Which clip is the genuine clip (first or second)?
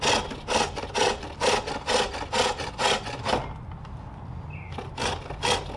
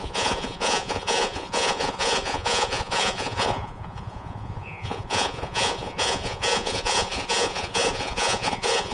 first